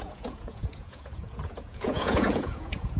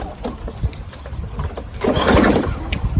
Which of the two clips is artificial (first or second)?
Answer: first